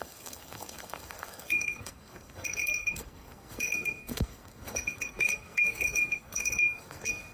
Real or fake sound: fake